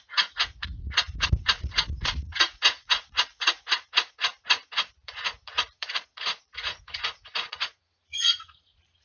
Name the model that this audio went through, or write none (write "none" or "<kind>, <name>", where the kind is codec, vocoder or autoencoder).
vocoder, Vocos